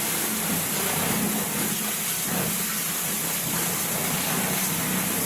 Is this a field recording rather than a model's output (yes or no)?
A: yes